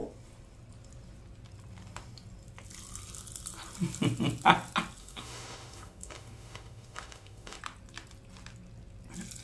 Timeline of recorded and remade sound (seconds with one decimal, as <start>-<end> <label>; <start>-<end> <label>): 0.0-5.0 recorded; 5.0-7.6 remade; 7.6-9.4 recorded